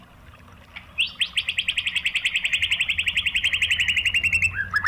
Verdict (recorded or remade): recorded